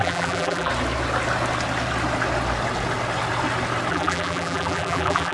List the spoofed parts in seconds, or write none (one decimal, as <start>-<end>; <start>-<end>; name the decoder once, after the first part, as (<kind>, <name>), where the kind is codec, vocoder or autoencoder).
0.0-0.7 (vocoder, BigVGAN v2); 3.9-5.3